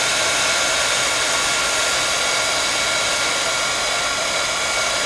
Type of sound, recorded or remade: recorded